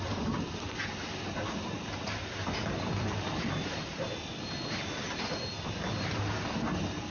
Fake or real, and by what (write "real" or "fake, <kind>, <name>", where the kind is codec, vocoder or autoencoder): fake, vocoder, BigVGAN v2